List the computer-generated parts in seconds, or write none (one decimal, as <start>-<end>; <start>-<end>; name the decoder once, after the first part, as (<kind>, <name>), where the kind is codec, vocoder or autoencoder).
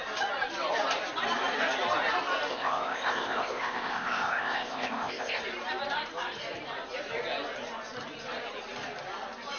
2.5-5.4 (codec, ZipCodec)